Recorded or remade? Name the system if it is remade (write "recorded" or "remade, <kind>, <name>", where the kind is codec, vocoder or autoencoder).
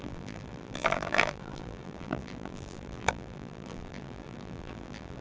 remade, vocoder, BigVGAN v2